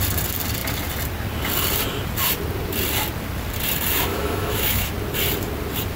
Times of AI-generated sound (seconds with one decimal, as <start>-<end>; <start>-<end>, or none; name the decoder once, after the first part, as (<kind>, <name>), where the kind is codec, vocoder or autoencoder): 4.1-4.9 (autoencoder, DAC-VAE)

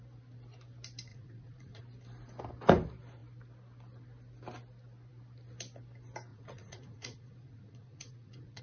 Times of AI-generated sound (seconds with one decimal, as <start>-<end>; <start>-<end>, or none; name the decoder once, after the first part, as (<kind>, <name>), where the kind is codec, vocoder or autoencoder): 1.1-1.8 (vocoder, Vocos); 6.3-8.6

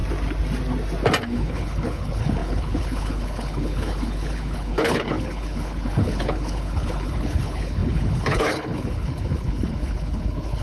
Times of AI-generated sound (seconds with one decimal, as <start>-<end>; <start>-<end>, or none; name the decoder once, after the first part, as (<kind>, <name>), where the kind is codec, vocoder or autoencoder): 1.2-10.6 (codec, HILCodec)

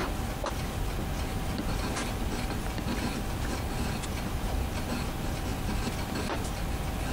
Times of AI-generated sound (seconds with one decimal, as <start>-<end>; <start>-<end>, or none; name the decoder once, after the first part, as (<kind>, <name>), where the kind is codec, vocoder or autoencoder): none